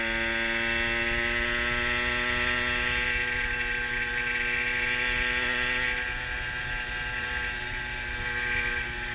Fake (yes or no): no